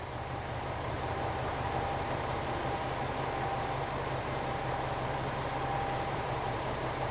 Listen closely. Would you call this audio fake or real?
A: fake